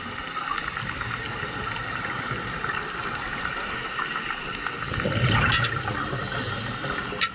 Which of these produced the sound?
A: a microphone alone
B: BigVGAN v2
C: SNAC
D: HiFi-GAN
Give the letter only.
A